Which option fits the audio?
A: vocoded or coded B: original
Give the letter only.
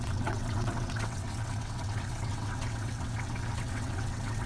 A